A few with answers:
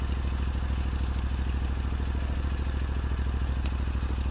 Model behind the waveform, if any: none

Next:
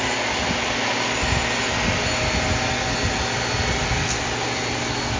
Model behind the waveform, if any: none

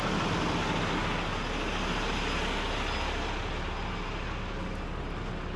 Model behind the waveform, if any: none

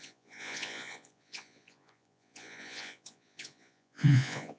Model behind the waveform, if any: vocoder, Vocos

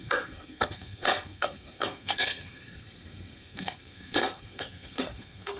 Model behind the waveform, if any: codec, SNAC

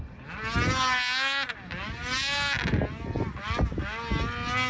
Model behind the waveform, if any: none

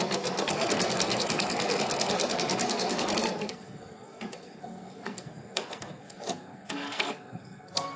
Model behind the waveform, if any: codec, SNAC